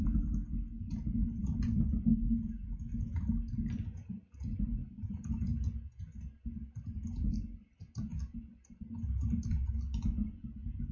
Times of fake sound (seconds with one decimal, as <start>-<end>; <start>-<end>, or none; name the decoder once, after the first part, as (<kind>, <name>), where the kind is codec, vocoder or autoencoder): none